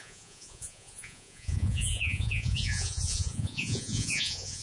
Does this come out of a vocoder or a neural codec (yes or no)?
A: yes